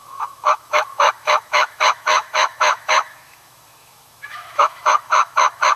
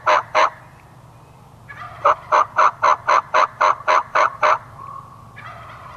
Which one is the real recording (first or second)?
second